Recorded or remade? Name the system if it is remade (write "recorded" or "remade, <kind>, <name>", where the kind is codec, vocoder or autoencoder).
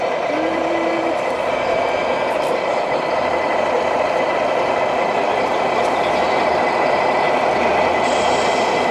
remade, vocoder, BigVGAN v2